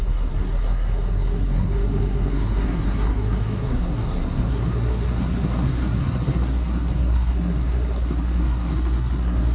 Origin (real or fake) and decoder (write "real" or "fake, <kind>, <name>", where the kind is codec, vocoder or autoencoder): fake, codec, SNAC